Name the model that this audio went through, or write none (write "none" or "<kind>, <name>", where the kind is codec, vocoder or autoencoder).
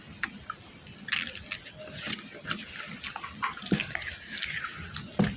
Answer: none